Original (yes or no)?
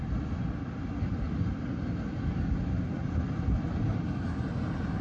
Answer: yes